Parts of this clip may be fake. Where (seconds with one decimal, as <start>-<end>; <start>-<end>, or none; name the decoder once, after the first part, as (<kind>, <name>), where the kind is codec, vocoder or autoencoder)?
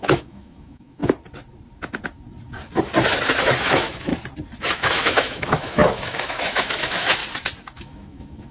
0.0-1.0 (autoencoder, DAC-VAE); 3.6-4.1; 4.7-7.2; 7.8-8.5